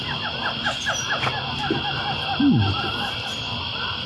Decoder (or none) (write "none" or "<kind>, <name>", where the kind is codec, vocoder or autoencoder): none